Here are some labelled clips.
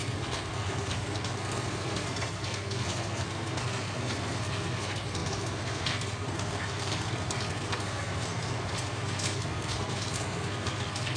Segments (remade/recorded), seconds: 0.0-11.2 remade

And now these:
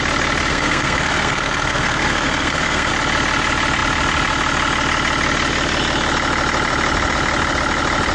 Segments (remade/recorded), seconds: 0.0-0.5 recorded; 0.5-2.9 remade; 2.9-8.1 recorded

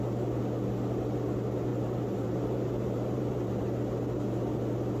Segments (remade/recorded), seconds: 0.0-1.7 recorded; 1.7-3.6 remade; 3.6-5.0 recorded

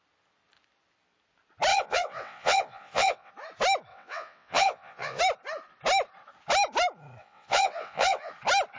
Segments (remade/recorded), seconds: 0.0-1.7 recorded; 1.7-3.3 remade; 3.3-3.9 recorded; 3.9-5.2 remade; 5.2-7.2 recorded; 7.2-8.3 remade; 8.3-8.8 recorded

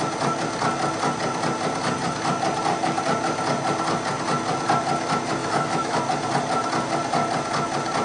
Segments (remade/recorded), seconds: 0.0-5.4 recorded; 5.4-6.0 remade; 6.0-8.0 recorded